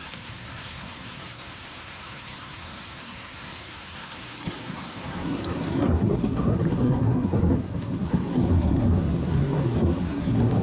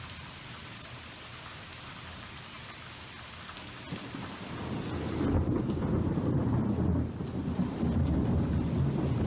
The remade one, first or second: first